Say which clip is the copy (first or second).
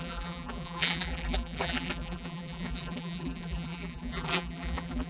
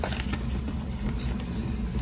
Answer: first